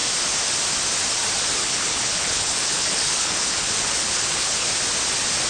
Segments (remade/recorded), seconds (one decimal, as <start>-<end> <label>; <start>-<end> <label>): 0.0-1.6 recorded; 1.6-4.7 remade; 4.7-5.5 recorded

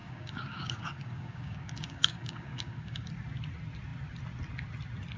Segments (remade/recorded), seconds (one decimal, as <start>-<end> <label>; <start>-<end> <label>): 0.0-3.1 remade; 3.1-5.2 recorded

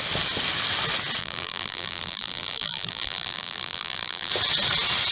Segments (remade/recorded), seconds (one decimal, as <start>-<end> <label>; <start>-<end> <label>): 0.0-1.2 recorded; 1.2-4.3 remade; 4.3-5.1 recorded

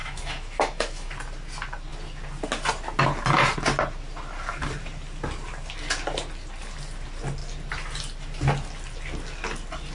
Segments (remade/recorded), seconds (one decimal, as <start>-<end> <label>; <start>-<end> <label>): 0.0-1.1 remade; 1.1-9.9 recorded